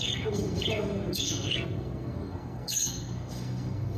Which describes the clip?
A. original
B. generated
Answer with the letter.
B